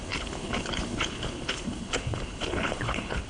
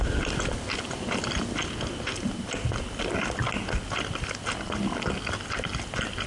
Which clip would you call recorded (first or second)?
second